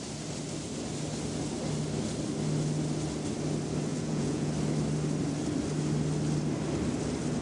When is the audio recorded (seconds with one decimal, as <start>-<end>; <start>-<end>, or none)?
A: 0.0-3.9; 4.5-7.4